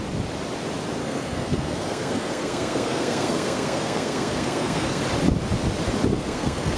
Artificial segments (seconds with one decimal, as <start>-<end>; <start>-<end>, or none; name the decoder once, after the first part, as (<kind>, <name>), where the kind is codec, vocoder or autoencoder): 1.0-5.0 (codec, SNAC); 6.1-6.8